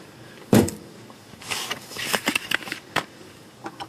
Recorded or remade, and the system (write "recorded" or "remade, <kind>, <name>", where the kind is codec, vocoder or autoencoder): remade, codec, DAC